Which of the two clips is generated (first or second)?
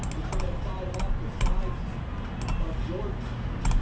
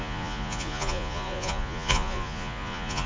second